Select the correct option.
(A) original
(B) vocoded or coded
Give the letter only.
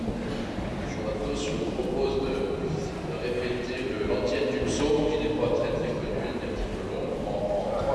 A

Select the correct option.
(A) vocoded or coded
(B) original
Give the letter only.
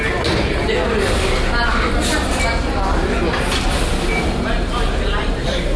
B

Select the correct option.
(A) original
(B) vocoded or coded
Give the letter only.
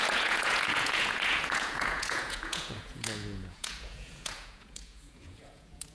B